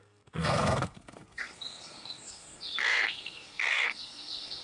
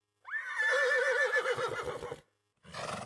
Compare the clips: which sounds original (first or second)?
second